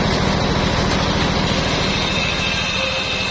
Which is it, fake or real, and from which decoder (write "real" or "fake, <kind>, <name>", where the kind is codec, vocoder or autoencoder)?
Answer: real